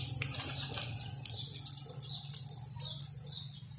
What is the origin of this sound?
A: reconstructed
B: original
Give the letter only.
B